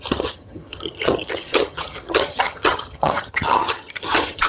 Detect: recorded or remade remade